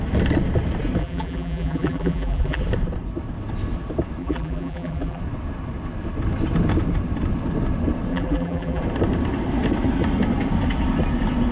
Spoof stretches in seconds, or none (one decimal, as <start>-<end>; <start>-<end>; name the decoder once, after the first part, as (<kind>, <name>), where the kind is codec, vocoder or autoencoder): 1.0-2.6 (vocoder, BigVGAN v2); 4.2-5.2; 8.1-8.8